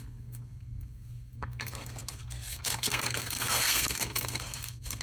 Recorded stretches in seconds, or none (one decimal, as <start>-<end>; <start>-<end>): none